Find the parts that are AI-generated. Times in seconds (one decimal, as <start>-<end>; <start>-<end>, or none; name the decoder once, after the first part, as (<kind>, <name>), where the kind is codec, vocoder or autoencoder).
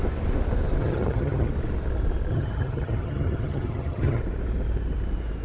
0.8-1.5 (vocoder, HiFi-GAN); 2.3-4.2